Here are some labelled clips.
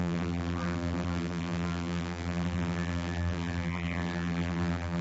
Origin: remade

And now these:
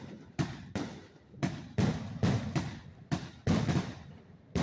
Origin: remade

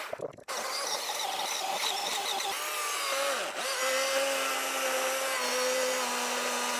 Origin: recorded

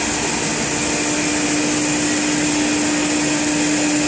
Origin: recorded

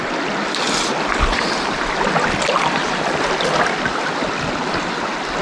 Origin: recorded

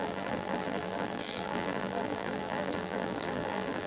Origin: remade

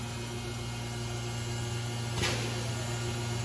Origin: recorded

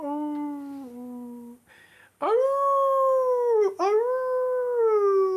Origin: recorded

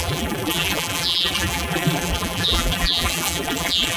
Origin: remade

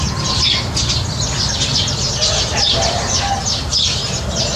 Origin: recorded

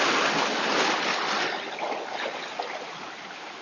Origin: recorded